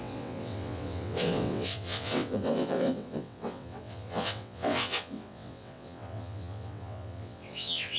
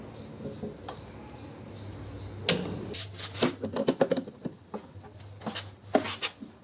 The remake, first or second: first